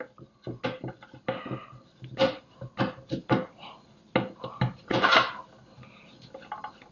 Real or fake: real